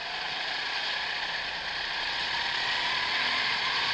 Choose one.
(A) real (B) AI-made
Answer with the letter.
B